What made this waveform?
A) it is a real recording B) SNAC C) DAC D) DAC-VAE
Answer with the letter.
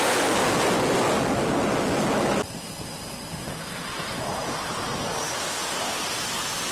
A